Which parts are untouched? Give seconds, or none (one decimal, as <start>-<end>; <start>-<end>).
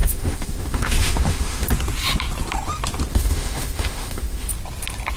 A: 1.7-3.1; 4.5-5.2